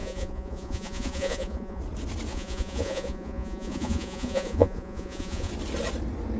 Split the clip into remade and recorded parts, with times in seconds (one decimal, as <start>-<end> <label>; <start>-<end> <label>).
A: 0.0-1.8 remade; 1.8-2.3 recorded; 2.3-5.5 remade; 5.5-6.4 recorded